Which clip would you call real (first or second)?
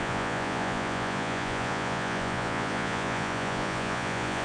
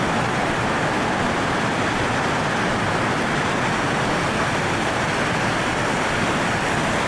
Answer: second